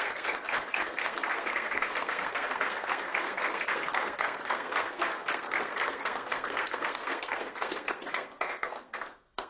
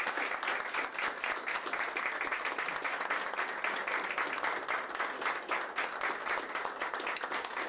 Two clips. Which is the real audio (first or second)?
second